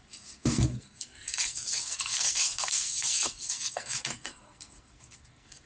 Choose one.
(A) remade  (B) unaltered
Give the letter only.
A